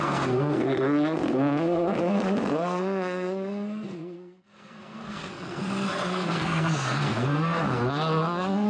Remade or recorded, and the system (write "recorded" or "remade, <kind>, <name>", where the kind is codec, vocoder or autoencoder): remade, codec, SNAC